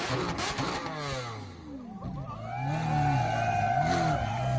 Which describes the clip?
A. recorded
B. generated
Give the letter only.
A